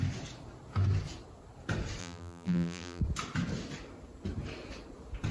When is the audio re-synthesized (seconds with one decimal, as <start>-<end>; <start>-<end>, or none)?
2.0-3.0

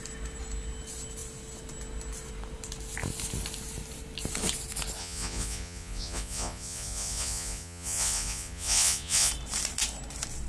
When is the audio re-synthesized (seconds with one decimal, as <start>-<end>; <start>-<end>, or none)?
5.0-9.3

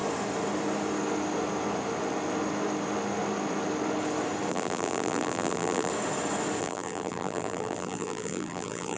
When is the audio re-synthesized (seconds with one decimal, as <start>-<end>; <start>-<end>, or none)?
4.5-5.9; 6.6-9.0

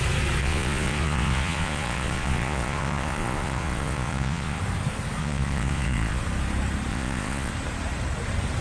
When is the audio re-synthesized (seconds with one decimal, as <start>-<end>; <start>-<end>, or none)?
0.4-4.6; 5.2-6.2; 6.9-7.5

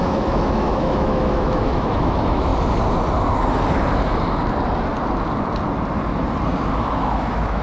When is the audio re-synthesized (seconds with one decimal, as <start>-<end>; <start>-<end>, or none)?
0.0-2.5; 6.8-7.6

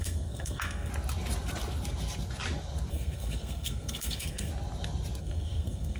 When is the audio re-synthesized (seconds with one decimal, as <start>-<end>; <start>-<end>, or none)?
0.0-0.9; 2.9-4.5; 5.2-6.0